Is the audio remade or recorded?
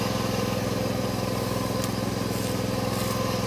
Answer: recorded